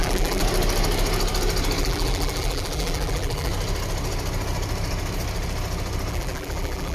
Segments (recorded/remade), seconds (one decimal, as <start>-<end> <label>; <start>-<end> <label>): 0.0-0.4 remade; 0.4-1.8 recorded; 1.8-3.5 remade; 3.5-6.1 recorded; 6.1-6.9 remade